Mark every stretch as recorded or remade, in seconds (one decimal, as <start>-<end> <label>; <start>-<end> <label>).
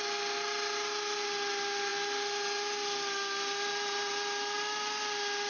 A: 0.0-5.5 recorded